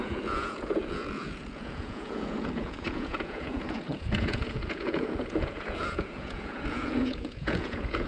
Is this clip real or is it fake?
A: fake